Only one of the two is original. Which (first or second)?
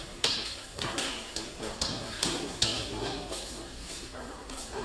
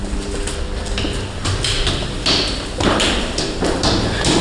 second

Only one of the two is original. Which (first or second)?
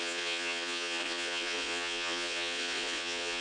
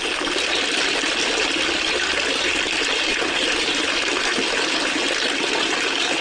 second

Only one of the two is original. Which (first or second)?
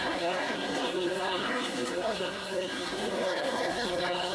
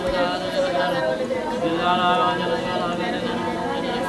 second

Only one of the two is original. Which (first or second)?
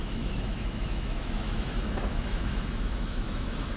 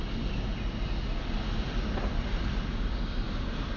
second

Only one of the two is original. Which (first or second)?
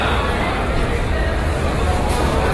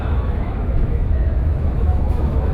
first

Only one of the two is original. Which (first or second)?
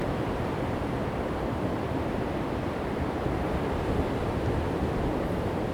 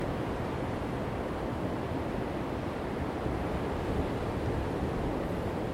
second